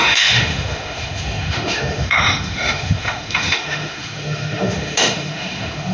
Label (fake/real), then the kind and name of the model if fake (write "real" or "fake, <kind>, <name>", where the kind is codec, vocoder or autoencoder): fake, autoencoder, DAC-VAE